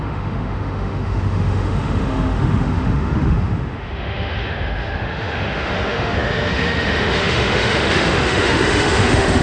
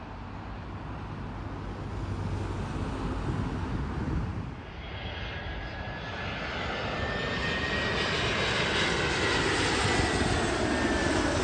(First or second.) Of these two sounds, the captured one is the second